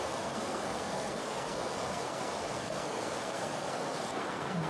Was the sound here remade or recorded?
remade